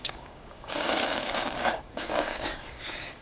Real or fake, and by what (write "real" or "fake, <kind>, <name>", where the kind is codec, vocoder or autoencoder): fake, codec, DAC